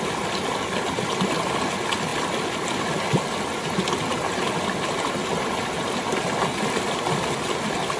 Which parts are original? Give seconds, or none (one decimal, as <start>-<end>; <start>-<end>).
0.0-8.0